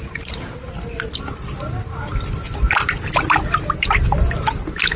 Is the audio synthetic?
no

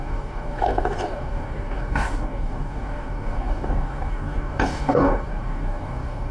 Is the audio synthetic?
yes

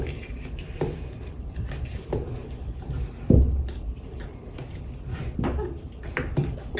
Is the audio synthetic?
no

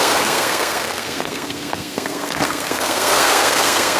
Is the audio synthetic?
yes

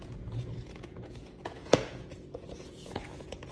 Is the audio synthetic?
yes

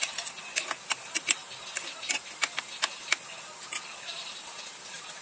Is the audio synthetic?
no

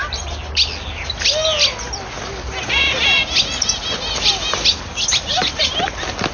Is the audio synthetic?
no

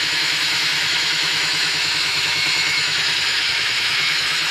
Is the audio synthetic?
yes